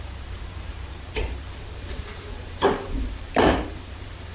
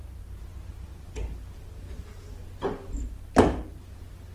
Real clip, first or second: second